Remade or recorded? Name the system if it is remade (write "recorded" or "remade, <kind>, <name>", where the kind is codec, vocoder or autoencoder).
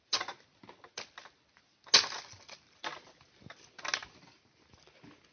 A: recorded